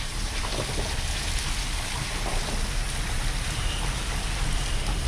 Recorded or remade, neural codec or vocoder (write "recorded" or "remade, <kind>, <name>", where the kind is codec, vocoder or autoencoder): recorded